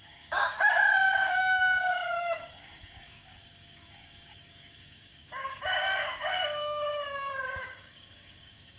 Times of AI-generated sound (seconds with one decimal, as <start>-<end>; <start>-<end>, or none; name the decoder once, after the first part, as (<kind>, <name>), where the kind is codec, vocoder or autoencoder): 0.0-8.8 (codec, DAC)